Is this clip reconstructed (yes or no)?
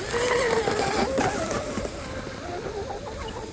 no